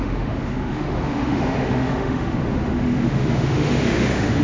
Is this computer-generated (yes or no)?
yes